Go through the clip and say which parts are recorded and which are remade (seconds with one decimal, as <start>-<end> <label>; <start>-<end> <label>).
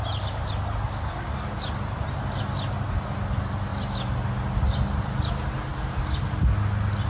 0.0-7.1 recorded